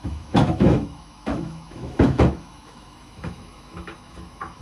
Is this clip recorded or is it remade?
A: remade